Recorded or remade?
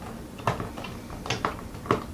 recorded